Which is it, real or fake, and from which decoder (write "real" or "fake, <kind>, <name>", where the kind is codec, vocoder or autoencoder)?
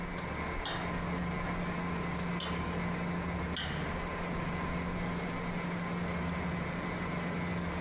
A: real